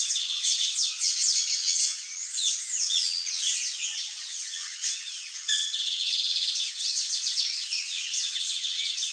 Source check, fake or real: fake